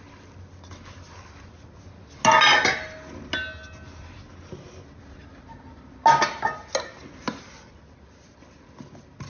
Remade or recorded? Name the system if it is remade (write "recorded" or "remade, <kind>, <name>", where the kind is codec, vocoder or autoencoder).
recorded